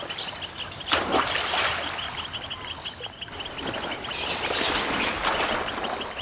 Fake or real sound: real